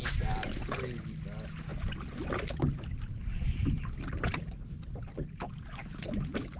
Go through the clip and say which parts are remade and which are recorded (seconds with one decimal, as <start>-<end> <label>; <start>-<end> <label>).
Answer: 0.0-6.6 recorded